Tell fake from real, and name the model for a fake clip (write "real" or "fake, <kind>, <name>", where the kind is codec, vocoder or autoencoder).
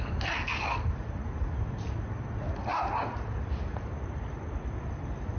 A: real